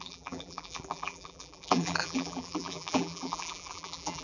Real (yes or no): no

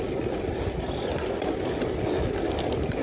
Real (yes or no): yes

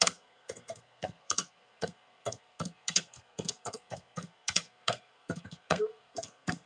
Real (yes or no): no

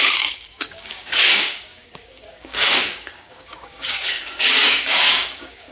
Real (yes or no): no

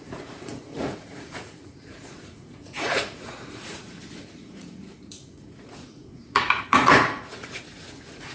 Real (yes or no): no